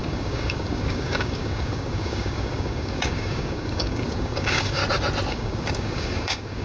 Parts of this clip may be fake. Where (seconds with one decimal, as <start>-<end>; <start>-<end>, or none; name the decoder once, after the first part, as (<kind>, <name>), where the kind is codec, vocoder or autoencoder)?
0.0-4.8 (codec, DAC); 5.3-6.6

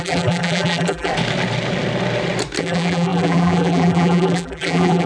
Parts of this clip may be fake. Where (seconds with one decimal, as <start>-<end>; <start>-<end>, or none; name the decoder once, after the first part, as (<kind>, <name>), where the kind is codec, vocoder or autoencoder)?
0.0-1.1 (vocoder, BigVGAN v2); 2.6-5.1

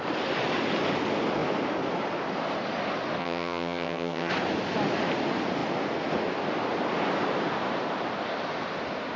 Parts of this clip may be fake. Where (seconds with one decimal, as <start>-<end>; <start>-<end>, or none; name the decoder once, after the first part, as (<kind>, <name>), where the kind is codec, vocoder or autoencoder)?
3.2-4.3 (vocoder, HiFi-GAN)

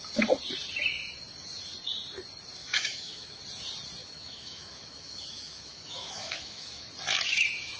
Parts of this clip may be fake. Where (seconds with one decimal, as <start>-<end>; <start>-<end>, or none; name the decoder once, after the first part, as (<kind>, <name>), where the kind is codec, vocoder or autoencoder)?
2.6-3.4 (autoencoder, DAC-VAE); 4.0-6.9

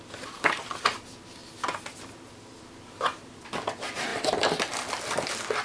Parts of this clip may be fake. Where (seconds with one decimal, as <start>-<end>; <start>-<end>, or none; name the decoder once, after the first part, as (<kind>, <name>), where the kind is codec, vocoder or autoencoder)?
4.1-4.7 (vocoder, BigVGAN v2)

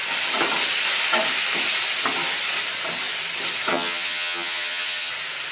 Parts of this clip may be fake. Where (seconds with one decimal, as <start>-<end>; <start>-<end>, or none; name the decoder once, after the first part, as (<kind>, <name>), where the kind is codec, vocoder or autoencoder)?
3.7-5.1 (vocoder, HiFi-GAN)